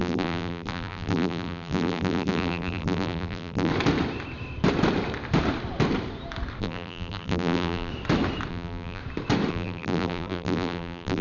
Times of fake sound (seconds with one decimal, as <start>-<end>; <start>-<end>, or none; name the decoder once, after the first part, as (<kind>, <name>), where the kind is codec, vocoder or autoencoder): 0.0-3.7 (vocoder, BigVGAN v2); 6.6-7.9; 8.5-9.0; 9.5-11.2